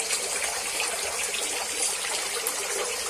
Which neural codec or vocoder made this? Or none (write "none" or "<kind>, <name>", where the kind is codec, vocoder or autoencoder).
none